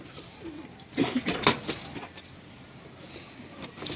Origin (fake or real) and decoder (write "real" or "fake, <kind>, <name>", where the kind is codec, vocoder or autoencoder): real